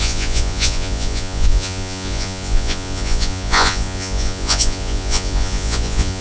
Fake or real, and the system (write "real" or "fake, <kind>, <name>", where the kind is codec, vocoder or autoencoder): fake, vocoder, Vocos